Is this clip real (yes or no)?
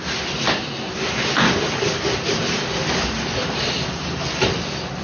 yes